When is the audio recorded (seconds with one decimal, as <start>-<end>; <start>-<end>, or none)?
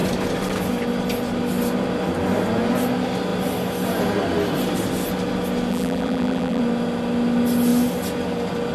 0.0-5.7; 6.6-8.7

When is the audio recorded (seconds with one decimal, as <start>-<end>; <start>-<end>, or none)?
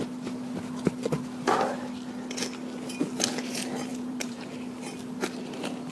0.0-3.9; 4.5-5.9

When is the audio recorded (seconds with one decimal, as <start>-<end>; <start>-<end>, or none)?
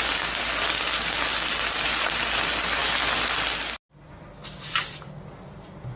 0.0-6.0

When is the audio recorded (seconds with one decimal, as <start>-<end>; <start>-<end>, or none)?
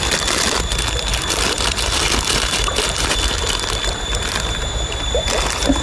0.0-1.1; 4.6-5.8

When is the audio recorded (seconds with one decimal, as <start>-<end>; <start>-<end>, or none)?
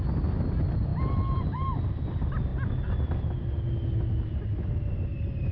0.0-0.9; 2.1-5.5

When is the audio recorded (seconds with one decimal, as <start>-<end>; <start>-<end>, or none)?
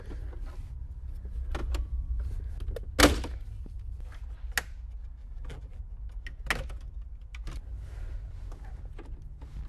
0.0-5.2; 5.8-9.7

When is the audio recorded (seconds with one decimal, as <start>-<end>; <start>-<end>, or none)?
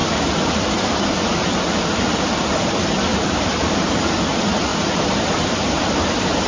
2.7-3.1; 3.9-4.7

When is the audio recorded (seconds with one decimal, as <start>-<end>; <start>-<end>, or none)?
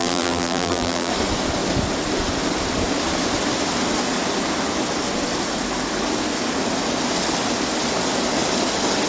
1.1-9.1